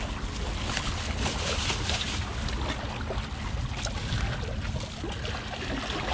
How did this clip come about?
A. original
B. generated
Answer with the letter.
A